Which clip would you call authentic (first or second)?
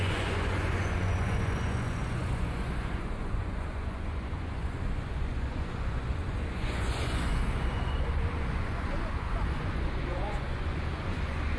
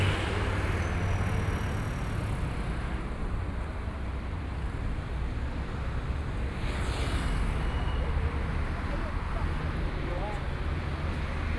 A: second